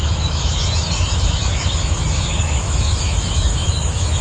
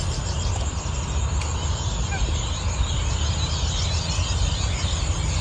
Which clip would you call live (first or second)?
second